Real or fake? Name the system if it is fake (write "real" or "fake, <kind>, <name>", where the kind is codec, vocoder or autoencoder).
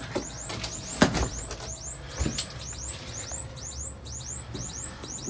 real